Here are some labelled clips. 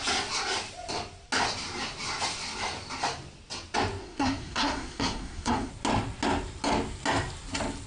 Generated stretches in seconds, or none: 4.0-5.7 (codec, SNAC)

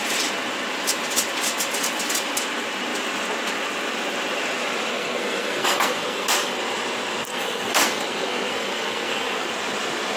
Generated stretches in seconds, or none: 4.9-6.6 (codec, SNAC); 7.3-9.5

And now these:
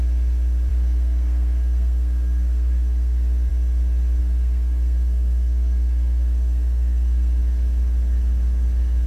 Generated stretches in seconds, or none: 0.7-3.5 (codec, SNAC); 4.2-7.4

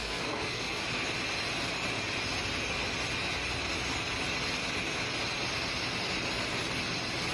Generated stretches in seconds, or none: 0.0-0.8 (codec, SNAC)

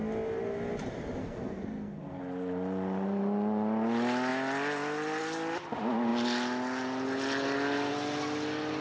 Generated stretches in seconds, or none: 1.2-2.2 (codec, SNAC)

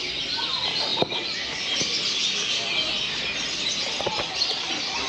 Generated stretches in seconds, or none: none

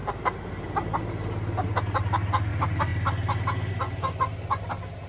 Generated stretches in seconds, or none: none

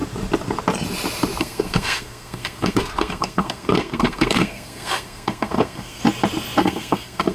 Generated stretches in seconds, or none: 1.4-6.0 (codec, SNAC); 6.6-7.3